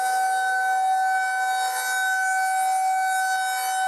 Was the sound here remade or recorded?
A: recorded